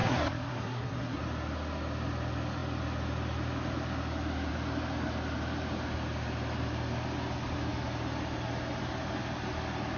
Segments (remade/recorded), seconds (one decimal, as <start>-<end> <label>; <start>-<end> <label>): 0.0-1.2 remade; 1.2-10.0 recorded